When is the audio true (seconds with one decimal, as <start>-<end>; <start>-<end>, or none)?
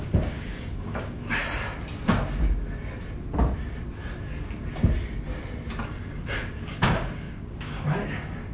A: 1.4-5.9